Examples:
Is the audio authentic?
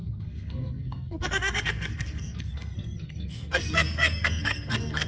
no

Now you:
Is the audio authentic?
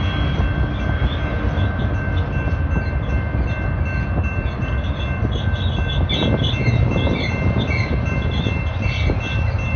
yes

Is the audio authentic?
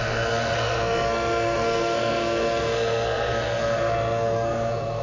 no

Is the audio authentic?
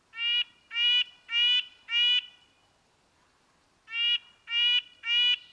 yes